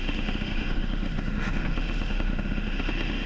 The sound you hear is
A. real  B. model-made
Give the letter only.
B